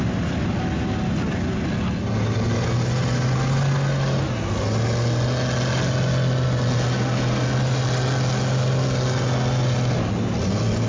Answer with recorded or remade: recorded